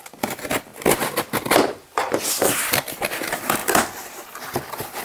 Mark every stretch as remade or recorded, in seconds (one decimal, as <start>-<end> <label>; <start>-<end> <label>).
0.0-5.0 recorded